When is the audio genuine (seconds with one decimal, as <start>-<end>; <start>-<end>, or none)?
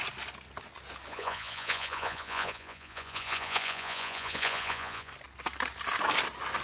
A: 0.0-1.1; 5.1-6.6